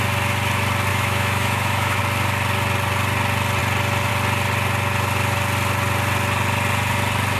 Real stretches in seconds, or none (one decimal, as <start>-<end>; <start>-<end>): 0.0-0.9; 2.0-7.4